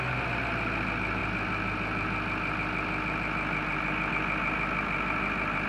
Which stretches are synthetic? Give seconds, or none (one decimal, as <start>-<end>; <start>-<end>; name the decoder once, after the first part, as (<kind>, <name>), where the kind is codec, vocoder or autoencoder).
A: none